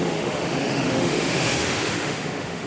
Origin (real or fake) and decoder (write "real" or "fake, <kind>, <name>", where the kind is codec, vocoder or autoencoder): fake, autoencoder, DAC-VAE